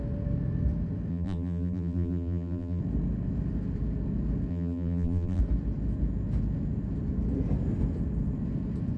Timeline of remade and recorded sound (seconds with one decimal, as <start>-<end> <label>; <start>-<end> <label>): 0.0-1.1 recorded; 1.1-2.8 remade; 2.8-4.5 recorded; 4.5-5.4 remade; 5.4-9.0 recorded